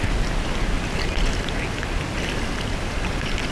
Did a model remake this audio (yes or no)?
no